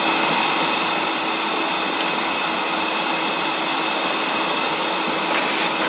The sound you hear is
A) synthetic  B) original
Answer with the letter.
B